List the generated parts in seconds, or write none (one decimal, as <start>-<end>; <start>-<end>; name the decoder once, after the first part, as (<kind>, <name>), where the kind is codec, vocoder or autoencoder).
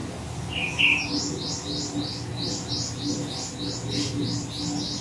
none